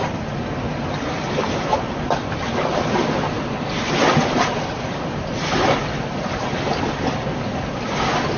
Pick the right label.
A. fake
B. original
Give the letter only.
B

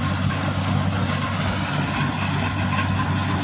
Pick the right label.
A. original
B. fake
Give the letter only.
A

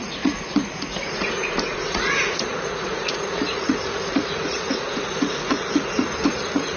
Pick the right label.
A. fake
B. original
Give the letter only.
A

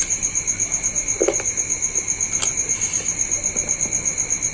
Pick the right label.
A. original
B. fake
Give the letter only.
A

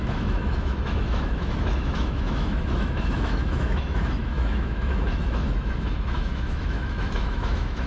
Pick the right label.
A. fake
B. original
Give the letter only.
A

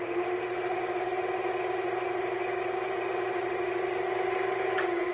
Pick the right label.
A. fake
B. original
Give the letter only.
B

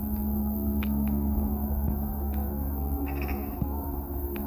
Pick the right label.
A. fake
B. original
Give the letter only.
A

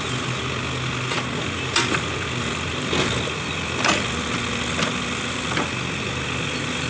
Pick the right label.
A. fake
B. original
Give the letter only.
B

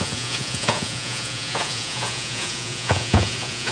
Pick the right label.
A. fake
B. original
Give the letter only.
A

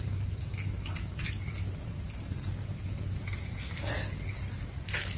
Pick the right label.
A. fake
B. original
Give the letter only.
B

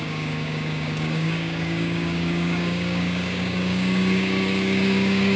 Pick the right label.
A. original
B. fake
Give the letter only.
B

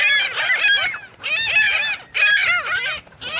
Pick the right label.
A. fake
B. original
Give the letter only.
B